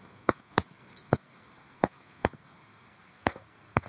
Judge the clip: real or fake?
fake